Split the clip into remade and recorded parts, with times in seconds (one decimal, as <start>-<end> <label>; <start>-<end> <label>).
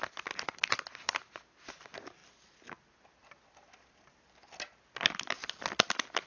0.0-6.3 recorded